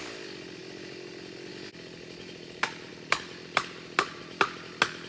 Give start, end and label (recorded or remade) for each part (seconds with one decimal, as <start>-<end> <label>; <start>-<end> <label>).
0.0-2.9 recorded; 2.9-4.2 remade; 4.2-5.1 recorded